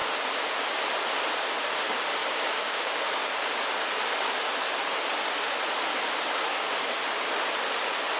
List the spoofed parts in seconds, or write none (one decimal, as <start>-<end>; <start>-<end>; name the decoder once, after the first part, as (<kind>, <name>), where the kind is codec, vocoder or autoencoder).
2.2-3.3 (codec, DAC); 6.5-7.0